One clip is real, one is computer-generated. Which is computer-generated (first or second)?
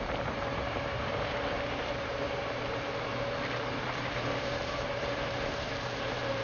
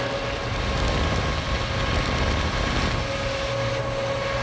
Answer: first